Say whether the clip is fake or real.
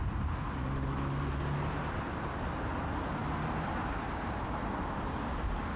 real